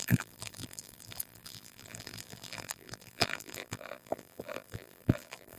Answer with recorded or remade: remade